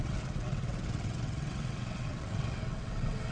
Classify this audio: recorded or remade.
remade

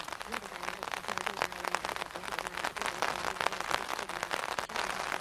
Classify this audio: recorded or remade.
recorded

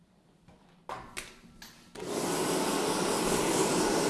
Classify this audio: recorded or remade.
recorded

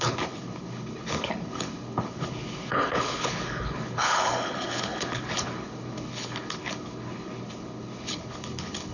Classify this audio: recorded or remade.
remade